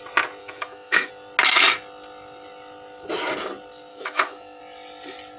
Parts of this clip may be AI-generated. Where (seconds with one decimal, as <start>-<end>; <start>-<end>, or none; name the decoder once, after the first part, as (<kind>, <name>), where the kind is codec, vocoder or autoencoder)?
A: 0.4-1.1 (autoencoder, DAC-VAE); 3.9-4.6